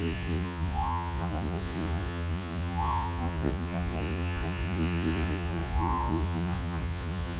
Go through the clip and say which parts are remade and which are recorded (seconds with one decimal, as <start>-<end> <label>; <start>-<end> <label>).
0.0-7.4 remade